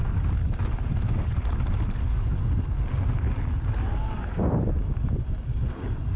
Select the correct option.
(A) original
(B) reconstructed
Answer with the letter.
A